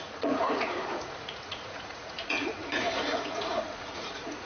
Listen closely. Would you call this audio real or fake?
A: fake